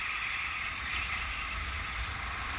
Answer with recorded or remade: recorded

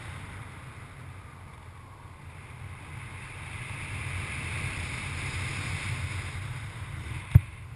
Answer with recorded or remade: recorded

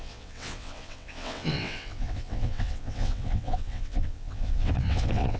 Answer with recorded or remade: remade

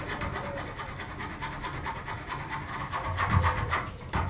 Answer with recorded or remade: recorded